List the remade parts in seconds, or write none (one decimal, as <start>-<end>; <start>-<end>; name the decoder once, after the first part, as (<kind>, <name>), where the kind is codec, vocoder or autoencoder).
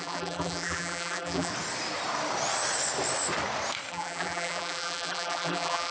0.0-1.5 (vocoder, BigVGAN v2); 3.9-5.9